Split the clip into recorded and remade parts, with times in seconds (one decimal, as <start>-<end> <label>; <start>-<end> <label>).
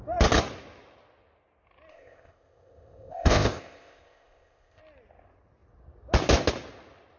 0.0-1.9 recorded; 1.9-4.8 remade; 4.8-7.2 recorded